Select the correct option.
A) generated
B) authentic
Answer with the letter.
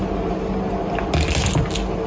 B